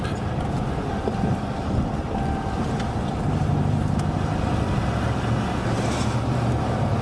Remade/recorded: recorded